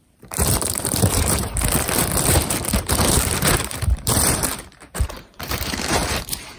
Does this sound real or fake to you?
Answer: fake